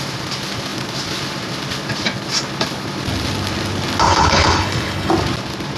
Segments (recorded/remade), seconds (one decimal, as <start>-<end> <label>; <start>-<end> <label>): 0.0-4.1 recorded; 4.1-5.1 remade; 5.1-5.8 recorded